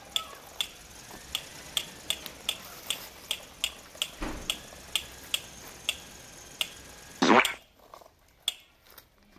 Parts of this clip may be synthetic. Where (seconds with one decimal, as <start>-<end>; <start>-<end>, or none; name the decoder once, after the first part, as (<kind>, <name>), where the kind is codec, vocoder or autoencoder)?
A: none